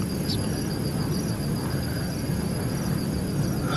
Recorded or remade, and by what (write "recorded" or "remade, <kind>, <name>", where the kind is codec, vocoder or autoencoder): recorded